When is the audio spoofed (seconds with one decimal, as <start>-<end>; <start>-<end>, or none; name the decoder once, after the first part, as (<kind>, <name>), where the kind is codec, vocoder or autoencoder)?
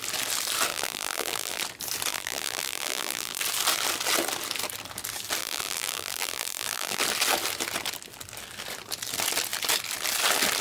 0.7-1.6 (vocoder, BigVGAN v2); 2.1-3.4; 5.4-7.0